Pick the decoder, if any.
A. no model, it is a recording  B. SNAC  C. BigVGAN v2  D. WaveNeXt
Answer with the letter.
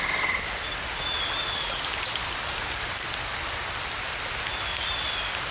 A